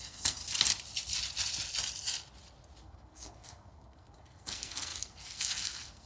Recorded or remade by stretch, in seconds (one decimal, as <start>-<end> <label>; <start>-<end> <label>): 0.0-0.4 remade; 0.4-2.8 recorded; 2.8-6.1 remade